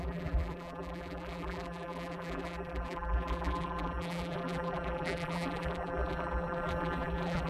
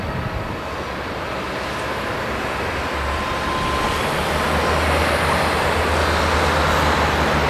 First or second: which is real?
second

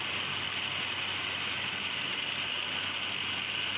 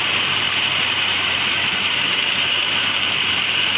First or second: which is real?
first